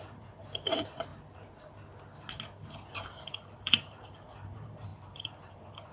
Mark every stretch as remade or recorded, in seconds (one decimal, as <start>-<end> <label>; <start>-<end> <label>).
0.0-1.1 remade; 1.1-2.9 recorded; 2.9-5.9 remade